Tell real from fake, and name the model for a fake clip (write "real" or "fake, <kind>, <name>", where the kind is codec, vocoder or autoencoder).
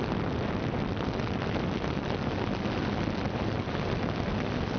real